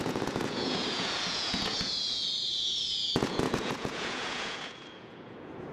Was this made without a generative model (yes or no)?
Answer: no